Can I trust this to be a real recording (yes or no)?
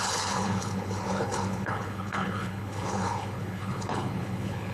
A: no